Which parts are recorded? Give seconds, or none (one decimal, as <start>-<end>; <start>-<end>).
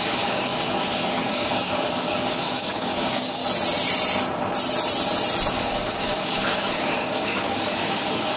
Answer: 3.4-5.5